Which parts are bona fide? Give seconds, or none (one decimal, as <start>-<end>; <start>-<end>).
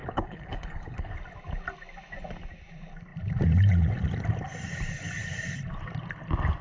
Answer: 1.1-6.6